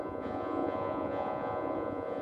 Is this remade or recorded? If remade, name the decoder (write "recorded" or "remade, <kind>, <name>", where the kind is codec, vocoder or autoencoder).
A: remade, vocoder, Vocos